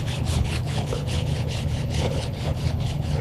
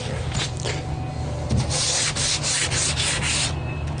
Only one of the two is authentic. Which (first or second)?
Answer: second